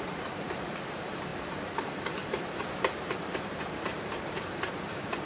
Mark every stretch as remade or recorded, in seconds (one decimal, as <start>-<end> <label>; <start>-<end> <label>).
0.0-5.3 remade